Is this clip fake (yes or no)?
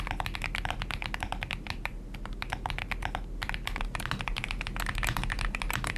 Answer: no